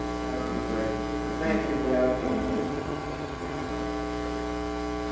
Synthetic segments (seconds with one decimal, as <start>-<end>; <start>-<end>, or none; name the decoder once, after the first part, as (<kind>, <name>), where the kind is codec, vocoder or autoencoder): 2.2-3.7 (vocoder, HiFi-GAN)